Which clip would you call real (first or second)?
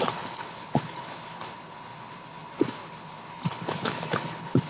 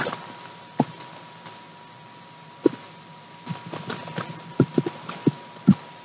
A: second